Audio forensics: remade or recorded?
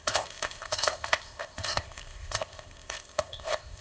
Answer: remade